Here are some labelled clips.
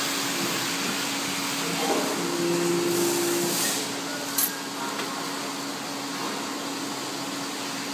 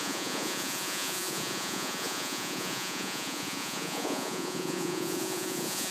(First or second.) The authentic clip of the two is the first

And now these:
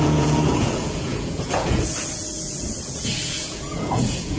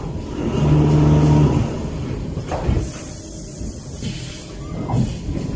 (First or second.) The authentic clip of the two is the second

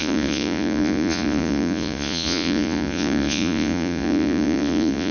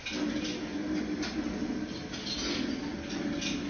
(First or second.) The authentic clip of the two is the second